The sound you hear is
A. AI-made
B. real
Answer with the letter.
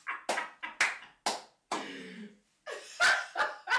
B